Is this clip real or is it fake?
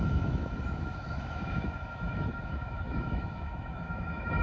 fake